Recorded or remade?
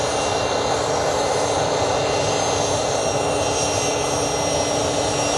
recorded